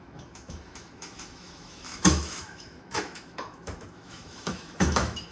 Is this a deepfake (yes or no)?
yes